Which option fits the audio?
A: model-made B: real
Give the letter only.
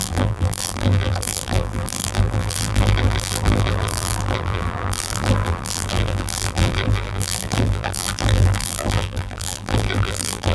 A